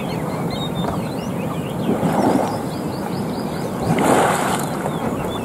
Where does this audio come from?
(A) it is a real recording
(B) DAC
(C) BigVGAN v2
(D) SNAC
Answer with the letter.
A